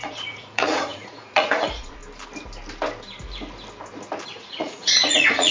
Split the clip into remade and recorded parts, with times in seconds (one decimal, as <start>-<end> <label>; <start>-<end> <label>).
0.0-2.0 remade; 2.0-4.3 recorded; 4.3-5.5 remade